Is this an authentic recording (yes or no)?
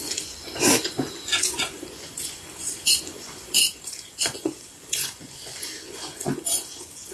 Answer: no